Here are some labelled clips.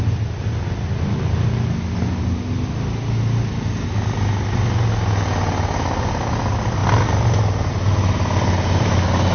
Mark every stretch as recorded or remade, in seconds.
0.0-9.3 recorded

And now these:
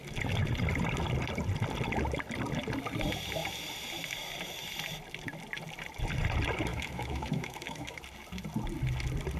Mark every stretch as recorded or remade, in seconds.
0.0-6.7 recorded; 6.7-8.0 remade; 8.0-9.4 recorded